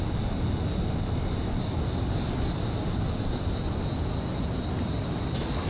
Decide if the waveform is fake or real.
real